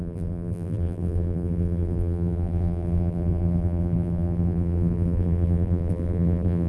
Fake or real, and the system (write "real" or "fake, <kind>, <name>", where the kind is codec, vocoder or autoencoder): fake, vocoder, BigVGAN v2